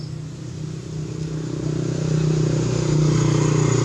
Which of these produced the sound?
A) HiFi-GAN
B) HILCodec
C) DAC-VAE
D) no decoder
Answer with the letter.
D